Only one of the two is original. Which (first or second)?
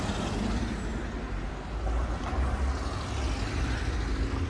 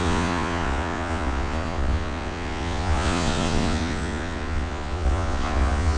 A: first